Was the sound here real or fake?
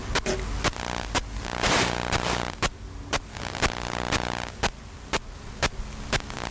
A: real